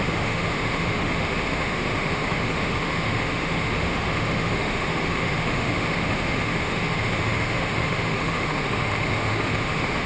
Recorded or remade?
remade